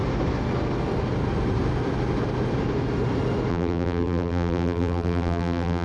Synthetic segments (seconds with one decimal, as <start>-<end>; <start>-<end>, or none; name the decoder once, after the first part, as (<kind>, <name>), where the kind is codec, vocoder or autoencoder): 3.5-5.8 (vocoder, BigVGAN v2)